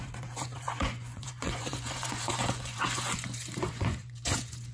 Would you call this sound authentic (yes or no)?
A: no